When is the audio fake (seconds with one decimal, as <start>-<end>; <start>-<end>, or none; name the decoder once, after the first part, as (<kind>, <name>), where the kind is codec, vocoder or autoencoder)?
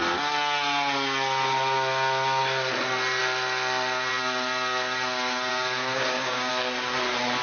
5.5-6.5 (codec, DAC)